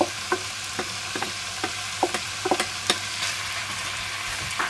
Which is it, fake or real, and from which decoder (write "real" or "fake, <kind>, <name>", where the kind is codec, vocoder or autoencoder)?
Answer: fake, vocoder, BigVGAN v2